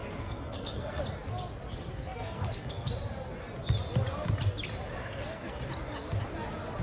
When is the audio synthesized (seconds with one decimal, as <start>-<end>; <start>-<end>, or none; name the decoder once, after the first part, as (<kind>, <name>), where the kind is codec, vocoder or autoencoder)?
0.0-1.0 (codec, SNAC); 1.9-2.9; 5.0-5.6